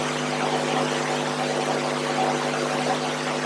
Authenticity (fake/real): real